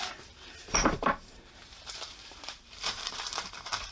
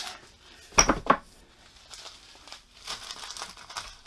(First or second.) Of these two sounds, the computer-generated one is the first